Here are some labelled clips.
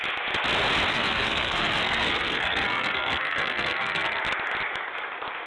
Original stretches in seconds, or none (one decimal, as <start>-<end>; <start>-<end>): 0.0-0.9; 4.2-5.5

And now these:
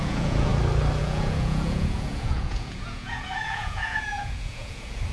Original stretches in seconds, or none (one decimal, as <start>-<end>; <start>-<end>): 0.5-1.0

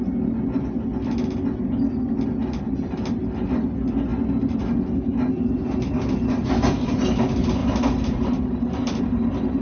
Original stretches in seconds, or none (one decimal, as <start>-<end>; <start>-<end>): 0.0-5.1; 5.7-7.6